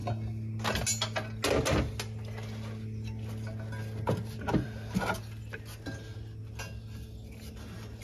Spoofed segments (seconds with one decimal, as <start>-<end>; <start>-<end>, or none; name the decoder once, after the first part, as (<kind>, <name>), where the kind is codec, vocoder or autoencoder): none